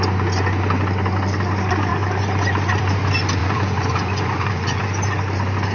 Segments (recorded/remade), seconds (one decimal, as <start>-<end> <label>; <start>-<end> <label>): 0.0-3.4 recorded; 3.4-4.8 remade; 4.8-5.7 recorded